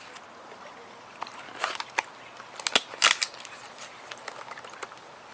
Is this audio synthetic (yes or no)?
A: no